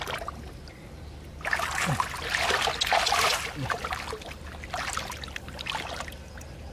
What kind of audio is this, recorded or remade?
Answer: recorded